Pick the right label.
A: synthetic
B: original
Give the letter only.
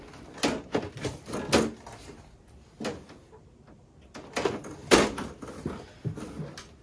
B